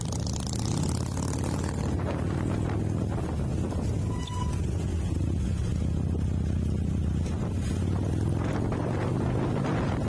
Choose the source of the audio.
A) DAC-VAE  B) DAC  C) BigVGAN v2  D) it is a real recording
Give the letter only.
D